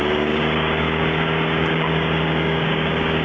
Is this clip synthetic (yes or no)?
yes